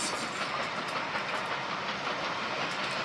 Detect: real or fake real